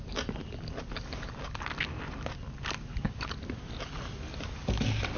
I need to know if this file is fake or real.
real